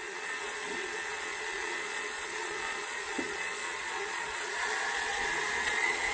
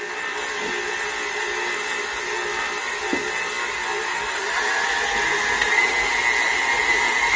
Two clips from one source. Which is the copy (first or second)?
first